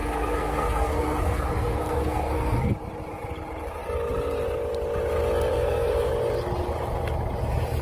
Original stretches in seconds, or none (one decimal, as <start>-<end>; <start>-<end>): 2.7-5.5; 6.1-7.8